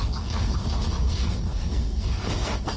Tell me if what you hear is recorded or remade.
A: remade